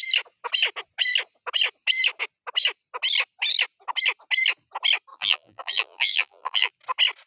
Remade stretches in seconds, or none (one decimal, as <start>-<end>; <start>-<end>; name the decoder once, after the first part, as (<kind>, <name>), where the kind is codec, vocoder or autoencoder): 5.1-6.7 (vocoder, BigVGAN v2)